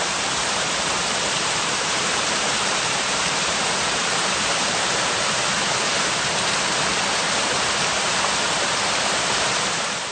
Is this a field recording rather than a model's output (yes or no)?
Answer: no